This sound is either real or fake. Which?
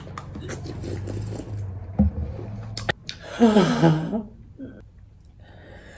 real